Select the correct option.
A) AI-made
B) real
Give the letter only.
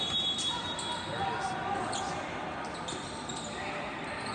B